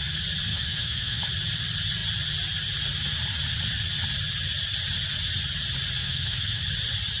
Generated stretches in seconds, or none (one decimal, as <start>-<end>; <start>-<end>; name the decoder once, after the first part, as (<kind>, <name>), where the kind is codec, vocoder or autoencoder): 0.5-1.3 (autoencoder, DAC-VAE); 6.0-6.6